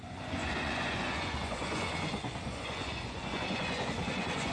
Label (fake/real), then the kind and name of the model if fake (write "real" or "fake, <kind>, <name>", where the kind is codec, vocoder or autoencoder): fake, vocoder, Vocos